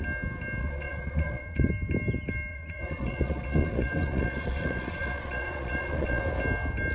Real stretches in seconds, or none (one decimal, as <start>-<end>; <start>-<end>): 0.0-0.6; 1.7-2.5; 6.2-6.9